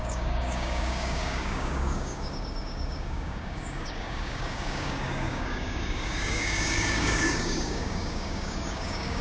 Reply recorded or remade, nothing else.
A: remade